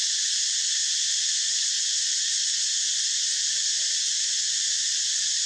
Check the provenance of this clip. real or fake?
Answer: real